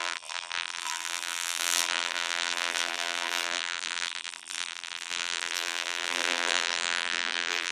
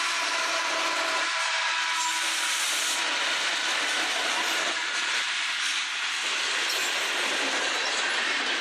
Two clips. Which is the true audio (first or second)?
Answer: second